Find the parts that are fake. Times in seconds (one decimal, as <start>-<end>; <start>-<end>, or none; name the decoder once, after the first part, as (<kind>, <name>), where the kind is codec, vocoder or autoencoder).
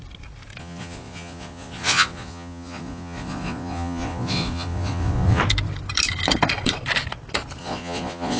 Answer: 0.6-5.4 (vocoder, Vocos); 7.6-8.4